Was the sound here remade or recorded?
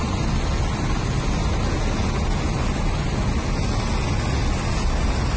recorded